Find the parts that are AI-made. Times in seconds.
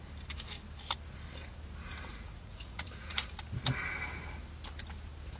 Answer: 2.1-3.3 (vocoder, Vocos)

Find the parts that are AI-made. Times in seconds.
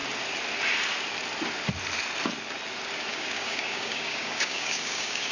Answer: 3.1-5.3 (codec, DAC)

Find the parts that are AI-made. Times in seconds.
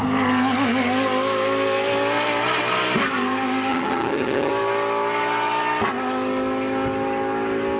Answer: 3.7-4.5 (vocoder, HiFi-GAN)